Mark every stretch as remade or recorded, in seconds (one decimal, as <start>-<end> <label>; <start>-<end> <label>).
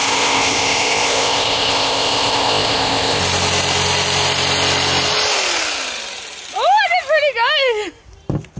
0.0-3.2 remade; 3.2-8.6 recorded